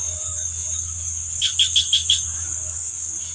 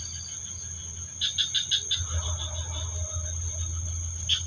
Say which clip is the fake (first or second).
first